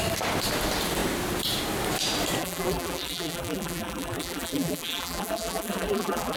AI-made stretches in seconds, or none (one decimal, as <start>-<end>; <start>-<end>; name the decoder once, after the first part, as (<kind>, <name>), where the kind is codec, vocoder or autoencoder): 2.4-6.4 (vocoder, BigVGAN v2)